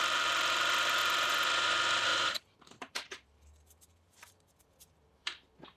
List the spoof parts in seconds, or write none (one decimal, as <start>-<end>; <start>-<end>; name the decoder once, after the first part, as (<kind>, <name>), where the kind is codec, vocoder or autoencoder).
0.0-1.0 (vocoder, BigVGAN v2); 1.6-5.8